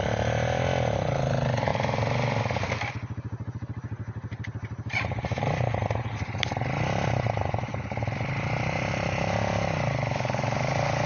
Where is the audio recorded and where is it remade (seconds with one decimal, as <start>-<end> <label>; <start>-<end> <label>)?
0.0-11.1 recorded